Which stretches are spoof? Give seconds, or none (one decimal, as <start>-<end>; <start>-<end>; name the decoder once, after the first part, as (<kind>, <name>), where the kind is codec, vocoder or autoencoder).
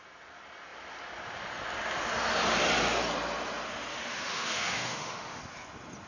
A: 3.9-5.4 (autoencoder, DAC-VAE)